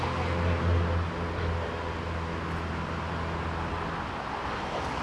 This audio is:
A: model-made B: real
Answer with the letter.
B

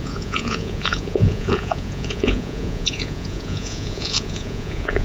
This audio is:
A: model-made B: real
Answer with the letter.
A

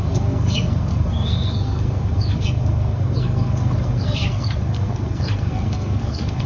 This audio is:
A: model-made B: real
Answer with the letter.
A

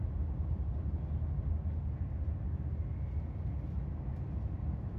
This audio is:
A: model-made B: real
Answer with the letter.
B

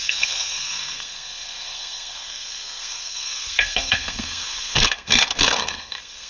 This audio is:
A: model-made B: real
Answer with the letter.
A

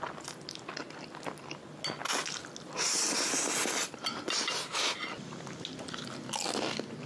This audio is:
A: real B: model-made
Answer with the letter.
A